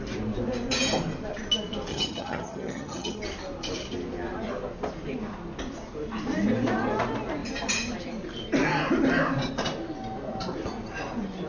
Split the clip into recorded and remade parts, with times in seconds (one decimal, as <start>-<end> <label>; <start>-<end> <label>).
0.0-1.9 recorded; 1.9-3.2 remade; 3.2-11.5 recorded